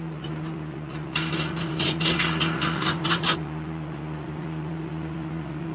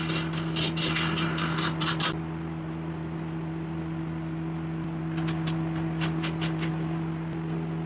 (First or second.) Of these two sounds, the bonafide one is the second